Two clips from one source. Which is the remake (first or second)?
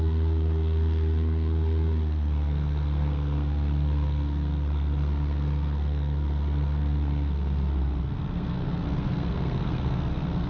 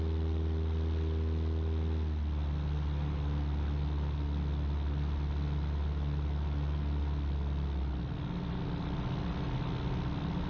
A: first